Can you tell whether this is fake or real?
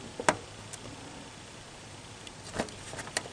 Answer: real